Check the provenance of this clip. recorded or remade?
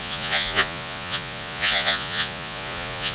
remade